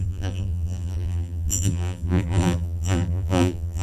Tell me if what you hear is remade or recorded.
remade